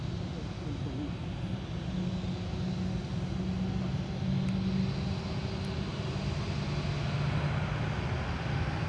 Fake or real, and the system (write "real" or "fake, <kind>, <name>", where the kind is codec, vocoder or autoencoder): real